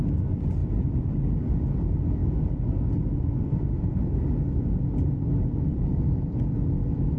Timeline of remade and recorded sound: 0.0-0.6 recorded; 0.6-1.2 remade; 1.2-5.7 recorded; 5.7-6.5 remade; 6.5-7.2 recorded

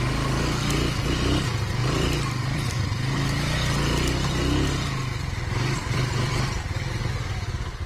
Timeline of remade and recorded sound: 0.0-1.8 recorded; 1.8-3.7 remade; 3.7-5.8 recorded; 5.8-7.1 remade; 7.1-7.9 recorded

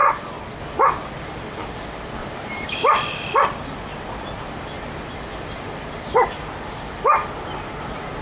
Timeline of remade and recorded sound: 0.0-2.2 recorded; 2.2-3.3 remade; 3.3-8.2 recorded

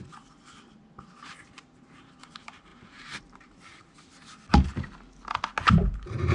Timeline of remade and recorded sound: 0.0-3.8 remade; 3.8-5.7 recorded; 5.7-6.3 remade

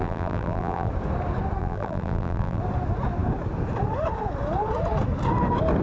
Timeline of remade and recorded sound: 0.0-0.9 remade; 0.9-1.6 recorded; 1.6-2.6 remade; 2.6-5.8 recorded

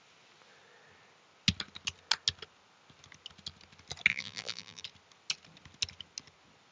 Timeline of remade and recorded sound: 0.0-4.1 recorded; 4.1-4.8 remade; 4.8-6.7 recorded

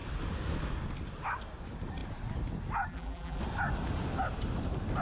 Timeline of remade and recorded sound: 0.0-2.9 recorded; 2.9-3.4 remade; 3.4-5.0 recorded